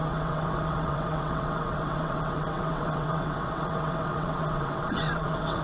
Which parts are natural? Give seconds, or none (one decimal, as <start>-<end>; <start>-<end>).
none